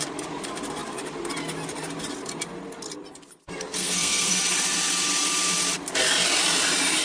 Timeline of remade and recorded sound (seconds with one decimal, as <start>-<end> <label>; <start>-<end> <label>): 0.0-3.8 recorded; 3.8-4.4 remade; 4.4-7.0 recorded